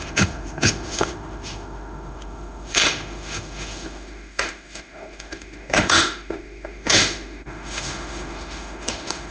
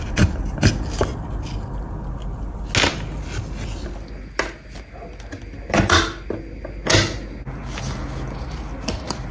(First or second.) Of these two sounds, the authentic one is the second